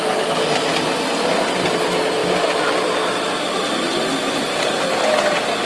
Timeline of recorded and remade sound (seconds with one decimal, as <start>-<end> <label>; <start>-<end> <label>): 0.0-5.6 recorded